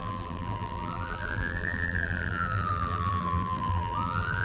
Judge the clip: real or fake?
fake